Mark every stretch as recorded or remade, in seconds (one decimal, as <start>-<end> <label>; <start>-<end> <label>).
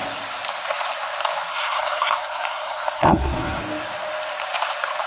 0.0-1.5 recorded; 1.5-3.6 remade; 3.6-5.1 recorded